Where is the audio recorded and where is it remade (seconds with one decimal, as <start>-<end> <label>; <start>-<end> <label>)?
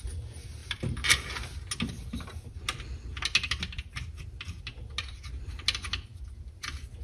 0.0-7.0 recorded